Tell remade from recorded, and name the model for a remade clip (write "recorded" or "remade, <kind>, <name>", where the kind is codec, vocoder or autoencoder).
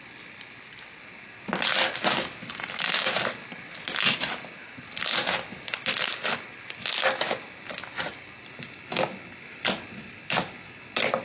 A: recorded